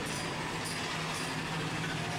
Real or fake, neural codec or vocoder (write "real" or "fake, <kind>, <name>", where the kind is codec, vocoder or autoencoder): real